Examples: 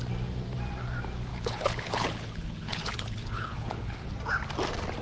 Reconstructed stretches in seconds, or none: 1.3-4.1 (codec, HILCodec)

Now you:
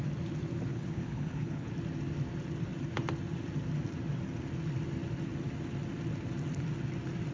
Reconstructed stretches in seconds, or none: 0.7-1.7 (codec, HILCodec)

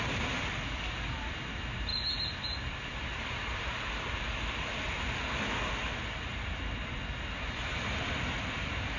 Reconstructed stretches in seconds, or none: none